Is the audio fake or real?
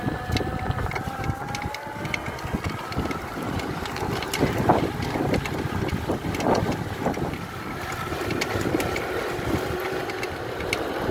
real